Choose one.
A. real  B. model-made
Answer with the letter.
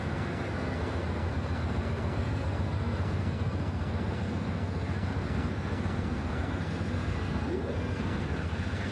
B